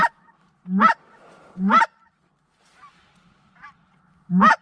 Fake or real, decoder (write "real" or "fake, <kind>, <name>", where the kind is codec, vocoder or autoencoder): fake, vocoder, BigVGAN v2